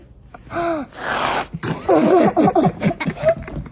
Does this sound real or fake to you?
real